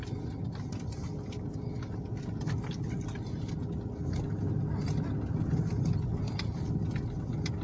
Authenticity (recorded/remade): recorded